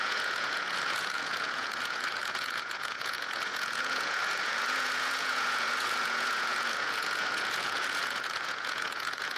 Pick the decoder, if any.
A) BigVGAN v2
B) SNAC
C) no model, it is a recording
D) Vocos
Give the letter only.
D